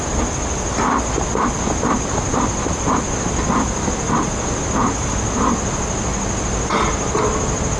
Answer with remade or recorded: recorded